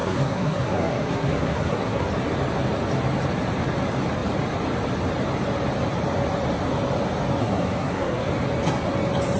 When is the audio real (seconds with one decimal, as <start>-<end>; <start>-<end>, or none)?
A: 2.1-7.4; 8.3-9.4